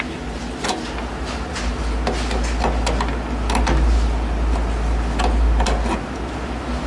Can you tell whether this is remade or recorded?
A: recorded